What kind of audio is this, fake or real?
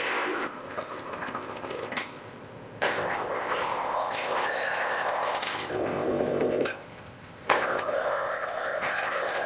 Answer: fake